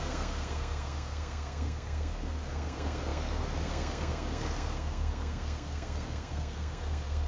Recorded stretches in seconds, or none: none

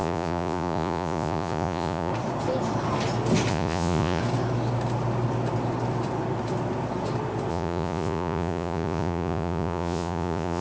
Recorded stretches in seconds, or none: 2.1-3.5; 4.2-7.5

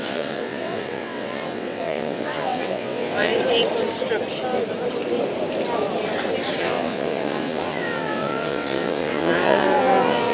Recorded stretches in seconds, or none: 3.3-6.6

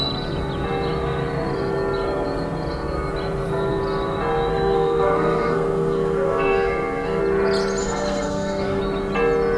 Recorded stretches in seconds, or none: 0.0-4.5; 7.2-7.8; 8.8-9.6

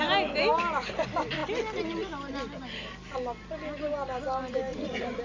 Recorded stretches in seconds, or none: 0.0-4.7

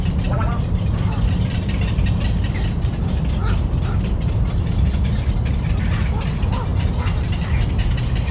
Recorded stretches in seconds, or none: 0.0-8.3

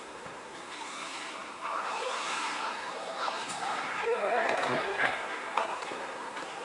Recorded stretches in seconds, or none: none

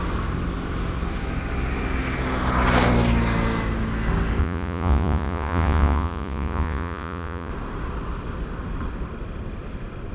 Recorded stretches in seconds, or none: 0.0-4.4; 7.5-10.1